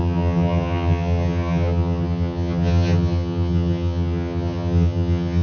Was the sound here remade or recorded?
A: remade